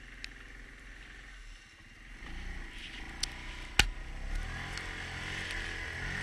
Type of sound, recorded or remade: recorded